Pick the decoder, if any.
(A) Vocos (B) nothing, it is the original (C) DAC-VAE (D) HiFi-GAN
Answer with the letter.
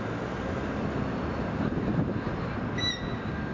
B